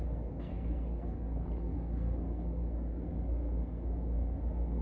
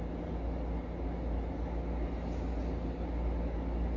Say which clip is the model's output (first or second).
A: first